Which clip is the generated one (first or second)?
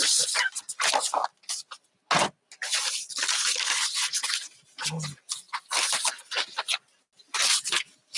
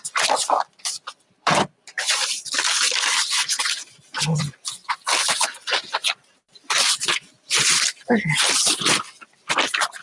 second